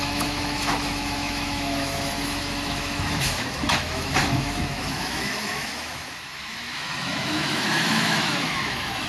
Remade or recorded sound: remade